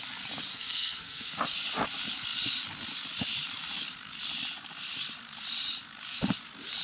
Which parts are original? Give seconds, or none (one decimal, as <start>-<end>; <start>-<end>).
0.0-0.5; 1.3-6.8